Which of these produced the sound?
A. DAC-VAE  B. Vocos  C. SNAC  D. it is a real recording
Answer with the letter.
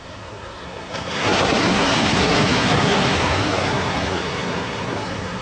C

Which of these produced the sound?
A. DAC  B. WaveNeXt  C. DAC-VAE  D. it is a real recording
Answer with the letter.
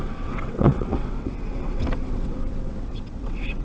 B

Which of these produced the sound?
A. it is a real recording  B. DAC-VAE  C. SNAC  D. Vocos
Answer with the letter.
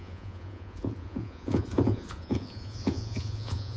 D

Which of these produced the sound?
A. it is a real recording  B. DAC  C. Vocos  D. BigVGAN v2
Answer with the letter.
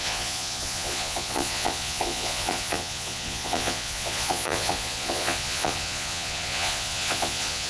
C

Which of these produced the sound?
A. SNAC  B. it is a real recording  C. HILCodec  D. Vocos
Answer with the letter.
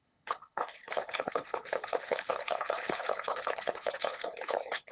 C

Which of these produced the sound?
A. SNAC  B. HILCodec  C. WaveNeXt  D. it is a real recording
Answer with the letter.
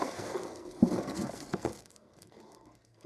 A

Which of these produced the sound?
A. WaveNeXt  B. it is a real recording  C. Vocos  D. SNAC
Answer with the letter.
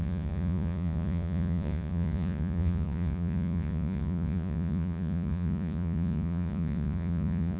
C